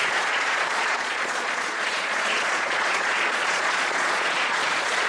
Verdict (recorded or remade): remade